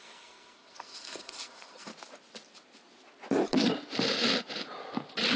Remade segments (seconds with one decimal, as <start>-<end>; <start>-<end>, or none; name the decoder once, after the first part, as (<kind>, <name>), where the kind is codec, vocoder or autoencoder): 0.0-1.9 (codec, SNAC)